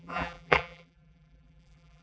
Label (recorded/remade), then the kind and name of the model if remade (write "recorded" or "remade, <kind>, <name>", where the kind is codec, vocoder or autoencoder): remade, vocoder, BigVGAN v2